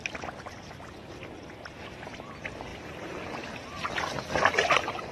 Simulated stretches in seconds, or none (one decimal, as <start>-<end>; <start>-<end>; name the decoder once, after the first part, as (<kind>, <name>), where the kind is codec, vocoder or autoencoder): none